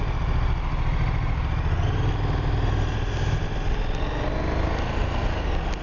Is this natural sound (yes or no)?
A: yes